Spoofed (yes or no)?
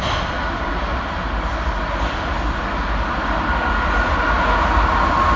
no